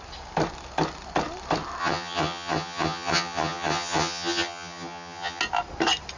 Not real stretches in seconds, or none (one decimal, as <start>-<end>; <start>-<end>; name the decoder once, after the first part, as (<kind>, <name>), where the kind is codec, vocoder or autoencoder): 1.8-5.4 (vocoder, HiFi-GAN)